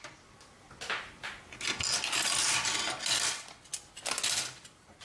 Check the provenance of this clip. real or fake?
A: real